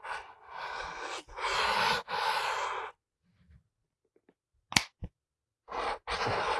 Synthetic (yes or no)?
no